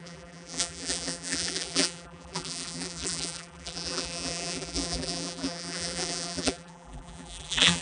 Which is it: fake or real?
fake